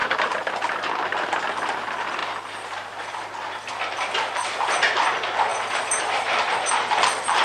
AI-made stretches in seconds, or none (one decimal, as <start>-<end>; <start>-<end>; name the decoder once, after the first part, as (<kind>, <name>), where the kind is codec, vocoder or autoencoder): 0.0-0.9 (vocoder, BigVGAN v2); 5.5-6.9